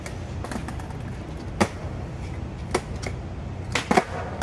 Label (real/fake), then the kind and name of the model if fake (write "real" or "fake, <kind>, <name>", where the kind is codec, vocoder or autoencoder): real